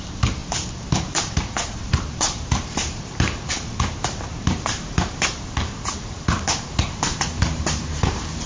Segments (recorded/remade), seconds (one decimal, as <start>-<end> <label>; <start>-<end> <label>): 0.0-0.4 remade; 0.4-1.2 recorded; 1.2-8.5 remade